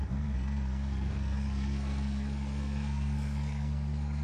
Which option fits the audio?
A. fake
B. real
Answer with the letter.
A